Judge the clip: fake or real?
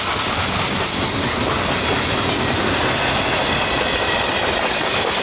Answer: real